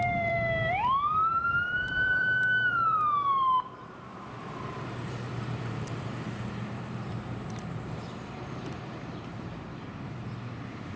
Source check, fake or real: fake